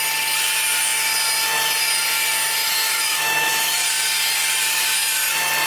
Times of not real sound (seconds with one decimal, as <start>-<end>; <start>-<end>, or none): 2.6-3.7